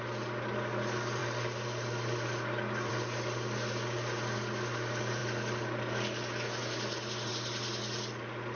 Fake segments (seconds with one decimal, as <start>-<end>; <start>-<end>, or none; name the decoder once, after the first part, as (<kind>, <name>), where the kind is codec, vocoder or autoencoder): none